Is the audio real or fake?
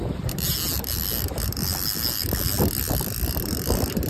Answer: real